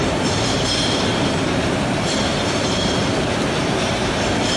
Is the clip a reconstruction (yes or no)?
yes